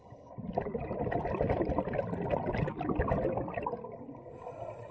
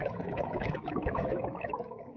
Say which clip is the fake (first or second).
second